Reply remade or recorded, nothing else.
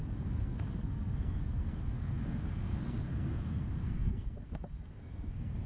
remade